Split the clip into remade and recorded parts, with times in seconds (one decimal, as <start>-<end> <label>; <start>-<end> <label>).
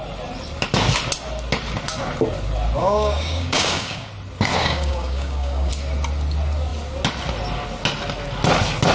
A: 0.0-2.8 recorded; 2.8-4.1 remade; 4.1-4.6 recorded; 4.6-5.7 remade; 5.7-8.9 recorded